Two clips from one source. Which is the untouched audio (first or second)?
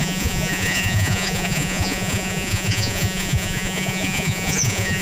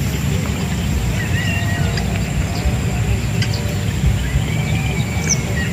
second